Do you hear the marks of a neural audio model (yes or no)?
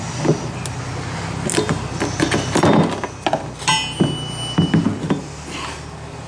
no